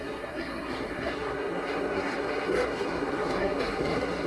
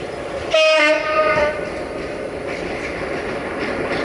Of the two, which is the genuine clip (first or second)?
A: second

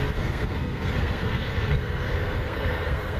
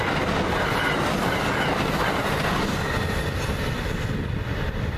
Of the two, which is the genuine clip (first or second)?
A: second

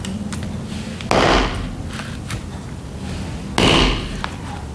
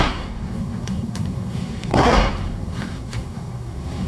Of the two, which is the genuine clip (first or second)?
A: first